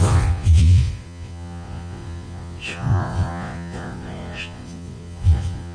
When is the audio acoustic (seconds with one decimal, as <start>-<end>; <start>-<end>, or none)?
none